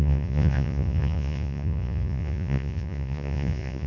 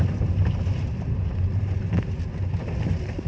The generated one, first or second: first